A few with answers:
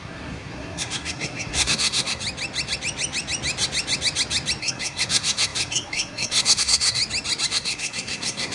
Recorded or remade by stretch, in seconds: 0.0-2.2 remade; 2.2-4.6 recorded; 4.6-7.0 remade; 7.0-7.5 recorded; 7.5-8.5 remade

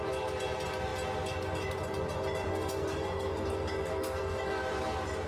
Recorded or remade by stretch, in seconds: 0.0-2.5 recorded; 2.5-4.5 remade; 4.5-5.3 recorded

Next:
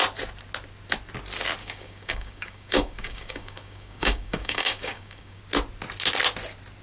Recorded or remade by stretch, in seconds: 0.0-1.6 recorded; 1.6-5.4 remade; 5.4-6.8 recorded

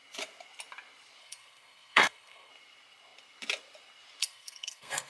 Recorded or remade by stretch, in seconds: 0.0-1.2 recorded; 1.2-2.5 remade; 2.5-4.2 recorded; 4.2-5.1 remade